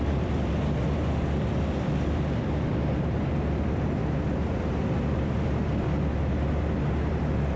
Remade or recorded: remade